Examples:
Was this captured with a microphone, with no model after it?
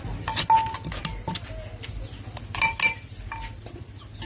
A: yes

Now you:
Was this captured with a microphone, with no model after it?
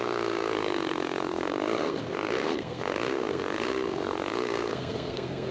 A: no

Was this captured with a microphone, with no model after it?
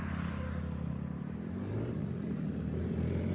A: yes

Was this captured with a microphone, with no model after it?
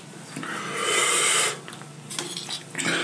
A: yes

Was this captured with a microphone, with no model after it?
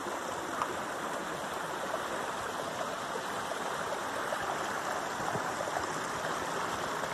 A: yes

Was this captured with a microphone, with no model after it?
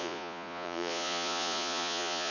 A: no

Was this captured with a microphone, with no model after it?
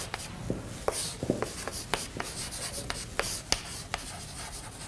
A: yes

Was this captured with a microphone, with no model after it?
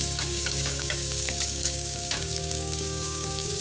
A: no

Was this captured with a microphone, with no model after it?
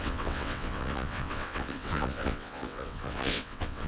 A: no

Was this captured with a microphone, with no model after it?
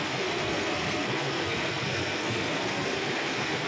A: no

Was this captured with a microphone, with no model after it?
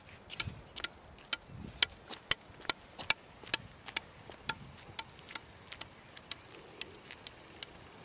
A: yes